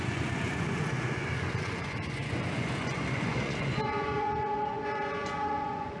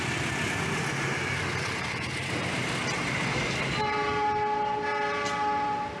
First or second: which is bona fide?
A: second